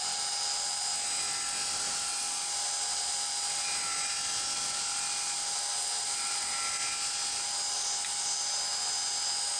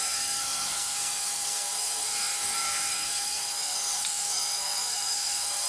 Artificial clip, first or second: second